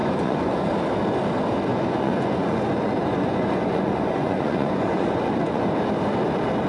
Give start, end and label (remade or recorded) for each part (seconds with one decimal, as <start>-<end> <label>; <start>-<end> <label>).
0.0-0.7 remade; 0.7-1.7 recorded; 1.7-5.7 remade; 5.7-6.7 recorded